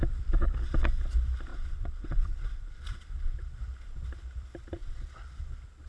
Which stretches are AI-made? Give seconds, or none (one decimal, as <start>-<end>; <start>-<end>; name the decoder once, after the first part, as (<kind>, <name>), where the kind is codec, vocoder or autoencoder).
1.5-3.6 (vocoder, Vocos); 4.8-5.9